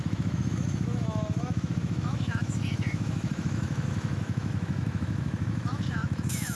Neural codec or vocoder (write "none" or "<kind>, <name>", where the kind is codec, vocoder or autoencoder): autoencoder, DAC-VAE